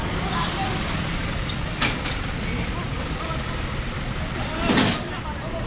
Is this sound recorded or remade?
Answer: remade